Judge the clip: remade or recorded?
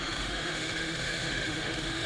remade